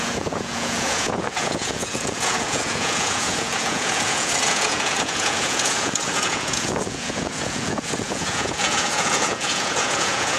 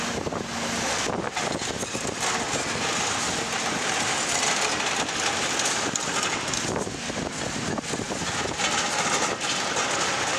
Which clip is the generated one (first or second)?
first